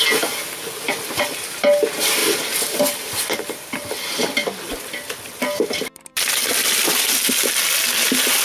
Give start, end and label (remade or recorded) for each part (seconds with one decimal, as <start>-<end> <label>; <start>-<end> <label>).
0.0-2.2 recorded; 2.2-2.9 remade; 2.9-4.4 recorded; 4.4-8.4 remade